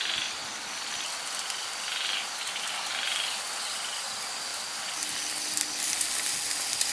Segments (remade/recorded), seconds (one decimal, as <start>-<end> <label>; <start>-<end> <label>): 0.0-6.9 recorded